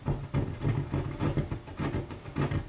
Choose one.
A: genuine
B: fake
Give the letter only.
A